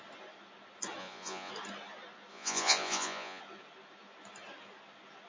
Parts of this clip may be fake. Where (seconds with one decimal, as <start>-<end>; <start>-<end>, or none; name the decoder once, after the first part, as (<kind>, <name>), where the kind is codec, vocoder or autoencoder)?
1.0-1.5 (vocoder, Vocos); 2.3-3.4